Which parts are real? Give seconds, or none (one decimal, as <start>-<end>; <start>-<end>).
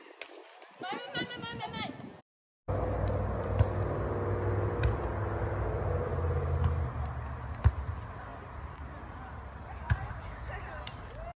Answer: 0.0-11.4